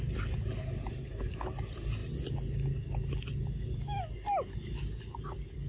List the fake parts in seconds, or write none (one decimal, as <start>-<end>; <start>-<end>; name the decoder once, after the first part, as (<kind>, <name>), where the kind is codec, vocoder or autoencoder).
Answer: none